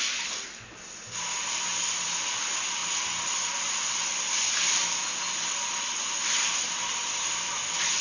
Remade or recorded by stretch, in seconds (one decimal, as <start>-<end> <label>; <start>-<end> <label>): 0.0-8.0 recorded